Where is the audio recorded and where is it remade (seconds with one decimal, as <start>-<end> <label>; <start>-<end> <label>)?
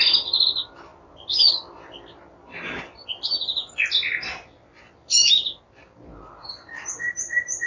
0.0-7.7 recorded